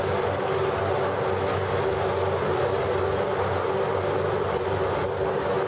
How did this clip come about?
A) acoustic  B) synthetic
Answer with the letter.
A